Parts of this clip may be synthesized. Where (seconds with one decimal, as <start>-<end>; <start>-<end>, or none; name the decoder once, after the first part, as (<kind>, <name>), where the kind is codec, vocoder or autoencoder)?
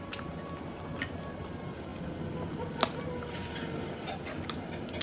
none